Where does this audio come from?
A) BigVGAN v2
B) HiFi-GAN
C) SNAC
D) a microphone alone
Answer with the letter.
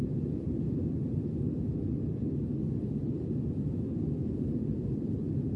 D